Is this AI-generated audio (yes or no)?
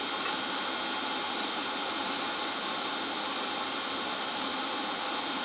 no